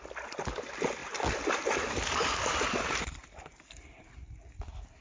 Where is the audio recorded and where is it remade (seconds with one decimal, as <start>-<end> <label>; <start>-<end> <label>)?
0.0-5.0 recorded